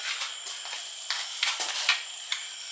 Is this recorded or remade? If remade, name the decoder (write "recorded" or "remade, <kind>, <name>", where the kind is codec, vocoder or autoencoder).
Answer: recorded